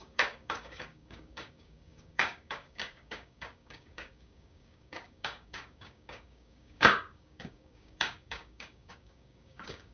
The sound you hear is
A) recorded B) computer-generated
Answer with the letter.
B